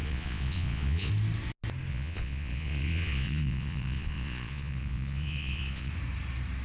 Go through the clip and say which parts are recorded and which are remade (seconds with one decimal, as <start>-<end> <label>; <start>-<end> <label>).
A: 0.0-1.1 remade; 1.1-1.9 recorded; 1.9-5.9 remade; 5.9-6.6 recorded